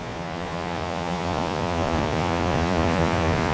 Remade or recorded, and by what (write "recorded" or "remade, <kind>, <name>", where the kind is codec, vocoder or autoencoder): remade, vocoder, Vocos